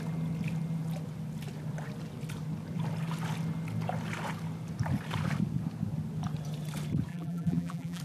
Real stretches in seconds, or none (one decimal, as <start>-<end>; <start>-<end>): 0.0-7.1